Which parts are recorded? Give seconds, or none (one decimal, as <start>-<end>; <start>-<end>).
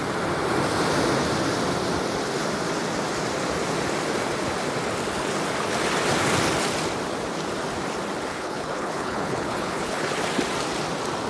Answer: 0.0-8.3; 10.2-11.3